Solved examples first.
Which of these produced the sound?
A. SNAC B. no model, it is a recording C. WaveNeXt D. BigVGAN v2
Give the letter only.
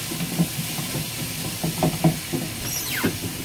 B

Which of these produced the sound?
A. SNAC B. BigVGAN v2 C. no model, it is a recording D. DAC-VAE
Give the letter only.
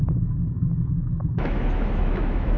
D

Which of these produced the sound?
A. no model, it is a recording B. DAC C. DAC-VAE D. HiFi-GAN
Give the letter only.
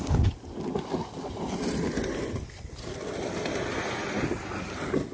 A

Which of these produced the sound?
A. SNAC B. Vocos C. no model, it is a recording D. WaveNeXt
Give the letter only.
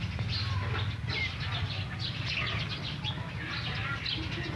C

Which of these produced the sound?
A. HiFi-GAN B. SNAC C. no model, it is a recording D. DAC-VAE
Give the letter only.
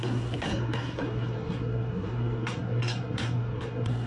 B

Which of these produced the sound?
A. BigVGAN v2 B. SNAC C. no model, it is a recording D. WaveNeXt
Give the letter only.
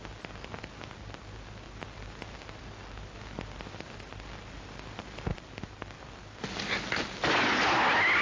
C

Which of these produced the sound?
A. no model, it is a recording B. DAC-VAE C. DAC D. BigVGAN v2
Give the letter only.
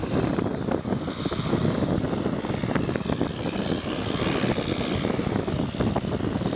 A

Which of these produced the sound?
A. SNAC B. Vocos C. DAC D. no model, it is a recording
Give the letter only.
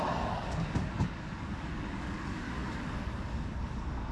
C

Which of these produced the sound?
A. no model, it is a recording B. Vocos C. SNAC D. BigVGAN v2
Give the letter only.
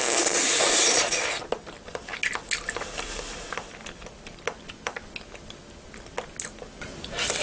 A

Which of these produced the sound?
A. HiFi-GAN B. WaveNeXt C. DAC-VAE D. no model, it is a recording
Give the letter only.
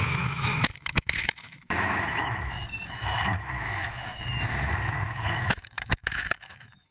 C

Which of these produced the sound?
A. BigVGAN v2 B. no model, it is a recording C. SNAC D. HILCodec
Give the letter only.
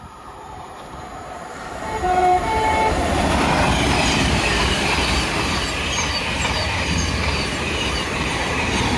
A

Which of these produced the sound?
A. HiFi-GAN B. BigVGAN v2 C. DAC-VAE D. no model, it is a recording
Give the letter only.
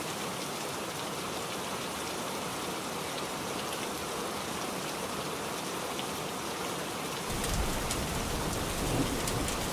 B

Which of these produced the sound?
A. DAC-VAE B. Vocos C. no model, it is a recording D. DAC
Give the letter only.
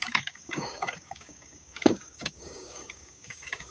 D